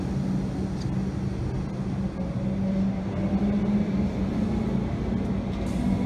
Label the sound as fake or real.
real